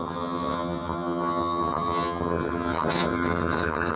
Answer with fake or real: fake